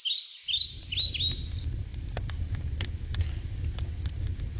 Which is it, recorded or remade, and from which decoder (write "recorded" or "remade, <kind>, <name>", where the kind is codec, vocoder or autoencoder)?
recorded